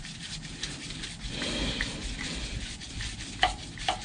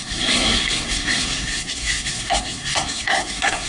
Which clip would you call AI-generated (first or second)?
second